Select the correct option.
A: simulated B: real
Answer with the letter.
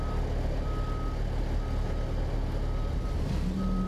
B